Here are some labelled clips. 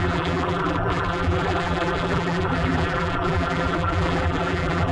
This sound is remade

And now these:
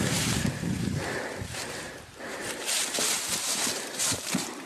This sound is remade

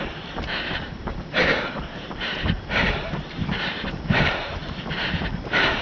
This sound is remade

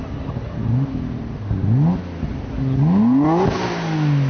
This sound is recorded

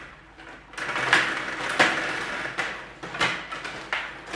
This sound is recorded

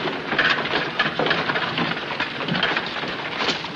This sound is recorded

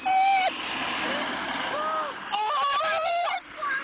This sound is remade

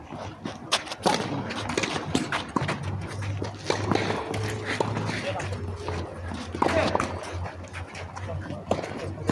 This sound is recorded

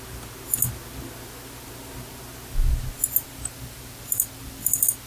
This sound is recorded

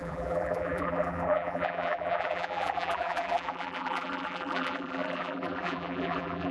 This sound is remade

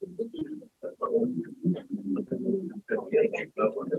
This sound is recorded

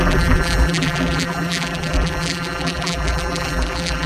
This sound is remade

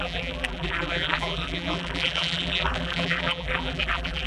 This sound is remade